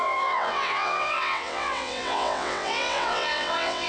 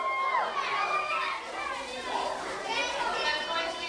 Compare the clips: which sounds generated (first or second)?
first